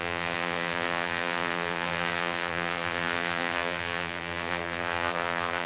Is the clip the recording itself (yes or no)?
no